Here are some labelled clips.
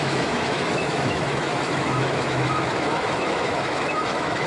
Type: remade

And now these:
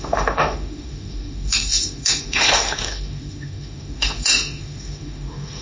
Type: remade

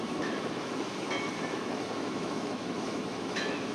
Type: remade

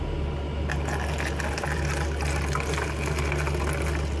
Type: recorded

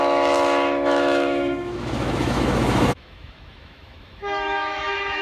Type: remade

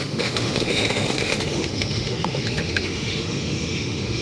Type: remade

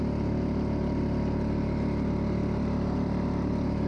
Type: recorded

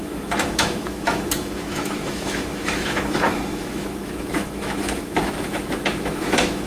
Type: remade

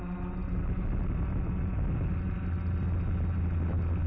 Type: recorded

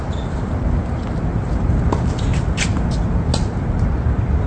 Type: recorded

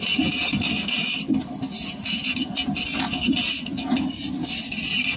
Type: recorded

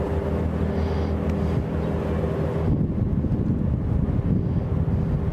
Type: recorded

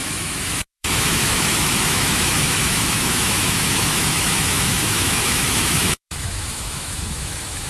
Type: remade